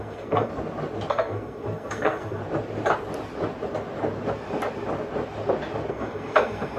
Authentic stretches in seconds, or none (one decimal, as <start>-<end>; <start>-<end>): 0.5-1.1; 2.4-5.9

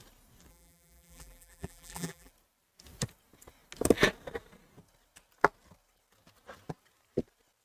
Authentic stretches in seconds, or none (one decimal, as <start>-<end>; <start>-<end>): 0.0-0.5; 2.3-7.6

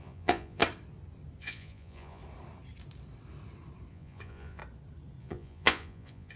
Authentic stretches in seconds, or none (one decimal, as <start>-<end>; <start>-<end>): 0.6-1.4; 2.2-3.9; 4.6-5.2